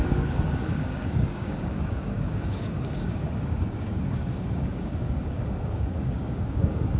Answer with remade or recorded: remade